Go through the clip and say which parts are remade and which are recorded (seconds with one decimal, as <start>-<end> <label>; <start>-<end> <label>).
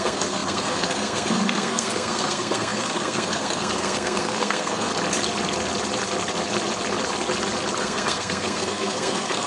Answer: 0.0-4.9 remade; 4.9-7.8 recorded; 7.8-9.5 remade